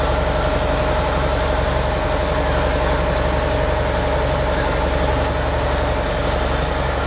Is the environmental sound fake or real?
real